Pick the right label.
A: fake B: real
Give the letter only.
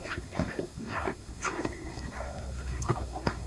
A